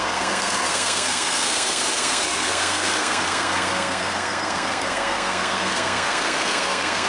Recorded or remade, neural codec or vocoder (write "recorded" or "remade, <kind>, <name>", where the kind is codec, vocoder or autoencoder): remade, codec, SNAC